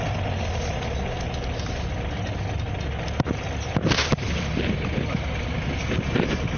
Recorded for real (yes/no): yes